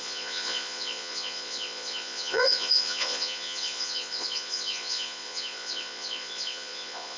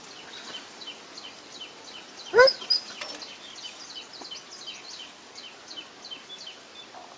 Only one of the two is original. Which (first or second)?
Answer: second